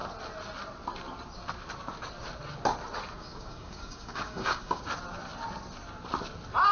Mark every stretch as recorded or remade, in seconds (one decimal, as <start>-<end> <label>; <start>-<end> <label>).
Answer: 0.0-3.2 recorded; 3.2-4.8 remade; 4.8-6.7 recorded

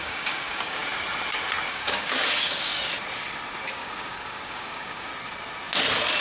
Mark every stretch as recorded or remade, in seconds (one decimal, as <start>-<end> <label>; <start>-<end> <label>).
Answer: 0.0-0.8 remade; 0.8-1.7 recorded; 1.7-2.7 remade; 2.7-3.7 recorded; 3.7-5.1 remade; 5.1-6.2 recorded